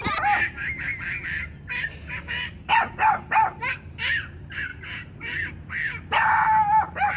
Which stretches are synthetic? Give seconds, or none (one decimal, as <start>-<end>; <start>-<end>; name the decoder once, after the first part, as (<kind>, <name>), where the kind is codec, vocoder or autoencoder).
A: none